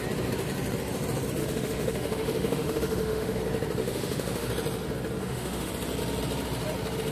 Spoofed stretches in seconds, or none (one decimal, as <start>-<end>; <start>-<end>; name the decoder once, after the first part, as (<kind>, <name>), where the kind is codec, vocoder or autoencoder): 1.4-3.4 (autoencoder, DAC-VAE); 3.8-4.5; 5.2-5.7